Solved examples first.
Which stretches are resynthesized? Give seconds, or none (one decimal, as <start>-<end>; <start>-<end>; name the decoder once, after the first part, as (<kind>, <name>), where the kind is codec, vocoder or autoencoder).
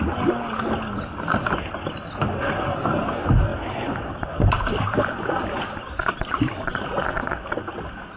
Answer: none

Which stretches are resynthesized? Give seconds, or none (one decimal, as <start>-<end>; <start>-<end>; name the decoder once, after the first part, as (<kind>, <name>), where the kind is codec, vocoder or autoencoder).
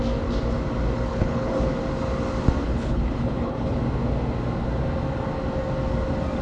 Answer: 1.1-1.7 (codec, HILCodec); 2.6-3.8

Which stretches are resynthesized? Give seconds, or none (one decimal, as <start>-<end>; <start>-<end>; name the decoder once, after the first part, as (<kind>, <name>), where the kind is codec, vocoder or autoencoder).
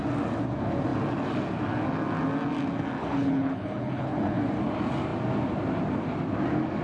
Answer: 3.0-4.4 (codec, HILCodec)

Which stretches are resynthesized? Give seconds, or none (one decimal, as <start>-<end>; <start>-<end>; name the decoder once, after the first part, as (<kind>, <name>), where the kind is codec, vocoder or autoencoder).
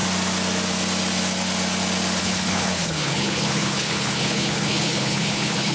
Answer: 2.2-5.7 (codec, HILCodec)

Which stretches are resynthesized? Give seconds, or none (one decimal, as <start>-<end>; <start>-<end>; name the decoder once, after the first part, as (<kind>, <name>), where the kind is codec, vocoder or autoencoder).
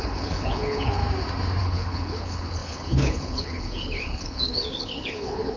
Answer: 0.0-1.0 (codec, HILCodec); 1.6-5.6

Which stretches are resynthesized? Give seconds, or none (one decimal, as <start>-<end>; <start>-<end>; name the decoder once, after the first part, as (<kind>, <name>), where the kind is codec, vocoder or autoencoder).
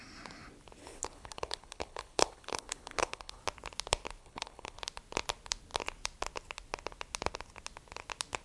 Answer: 0.8-3.4 (codec, HILCodec); 4.2-4.8